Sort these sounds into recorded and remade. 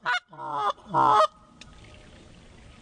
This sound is recorded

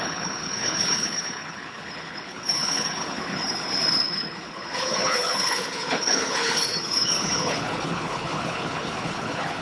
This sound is remade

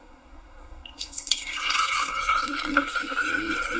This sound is remade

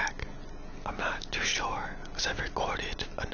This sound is recorded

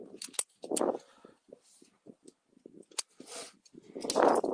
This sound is recorded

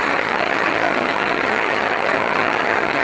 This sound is remade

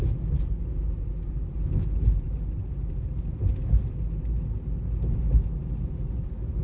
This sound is recorded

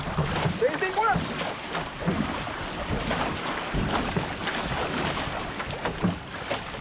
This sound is recorded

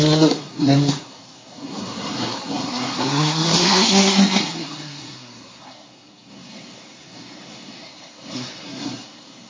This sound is remade